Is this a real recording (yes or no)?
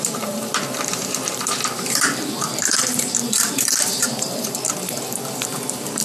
no